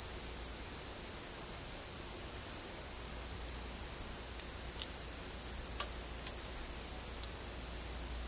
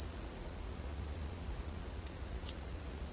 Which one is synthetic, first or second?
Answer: second